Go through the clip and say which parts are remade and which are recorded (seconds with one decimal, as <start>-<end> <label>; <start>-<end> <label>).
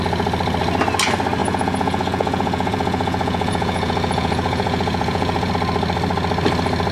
0.0-1.4 recorded; 1.4-5.5 remade; 5.5-6.9 recorded